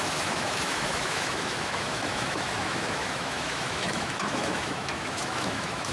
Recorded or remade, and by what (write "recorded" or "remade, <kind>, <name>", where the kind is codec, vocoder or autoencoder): remade, autoencoder, DAC-VAE